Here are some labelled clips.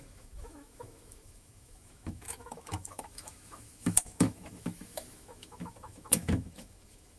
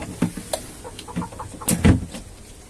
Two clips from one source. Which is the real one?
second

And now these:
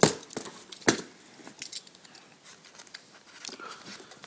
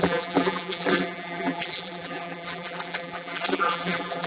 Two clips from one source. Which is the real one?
first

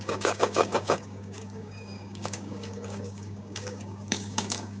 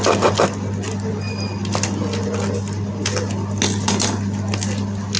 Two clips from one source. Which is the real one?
second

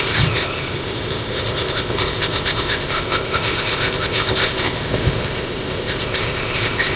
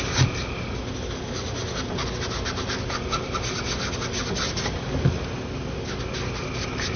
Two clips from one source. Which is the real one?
second